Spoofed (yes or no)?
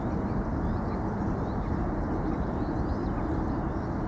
no